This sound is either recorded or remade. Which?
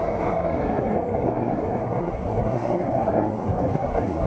remade